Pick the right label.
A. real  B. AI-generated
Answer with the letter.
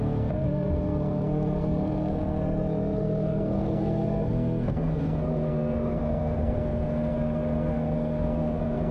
B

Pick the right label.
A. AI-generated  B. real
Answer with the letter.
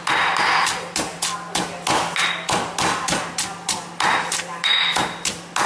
B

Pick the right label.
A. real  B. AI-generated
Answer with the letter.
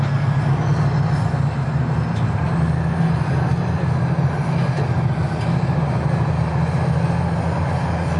A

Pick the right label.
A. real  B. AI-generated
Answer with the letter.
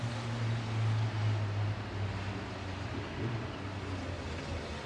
A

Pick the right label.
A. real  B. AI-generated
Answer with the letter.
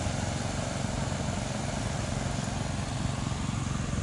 A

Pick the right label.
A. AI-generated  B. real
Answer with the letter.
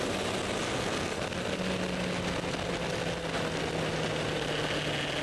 B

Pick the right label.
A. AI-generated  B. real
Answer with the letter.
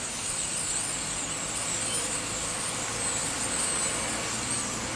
B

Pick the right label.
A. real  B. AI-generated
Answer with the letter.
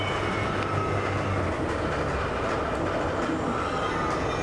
A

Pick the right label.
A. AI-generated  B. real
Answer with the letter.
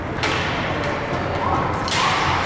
B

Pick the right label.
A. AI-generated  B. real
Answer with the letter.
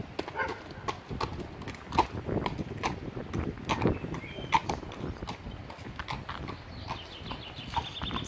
B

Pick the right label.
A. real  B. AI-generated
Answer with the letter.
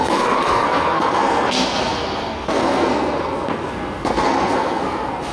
B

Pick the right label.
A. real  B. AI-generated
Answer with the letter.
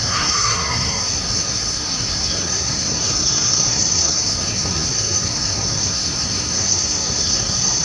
B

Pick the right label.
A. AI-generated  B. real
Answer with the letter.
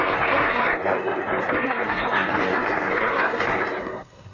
A